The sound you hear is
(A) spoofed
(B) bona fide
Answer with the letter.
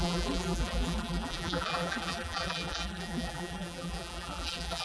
A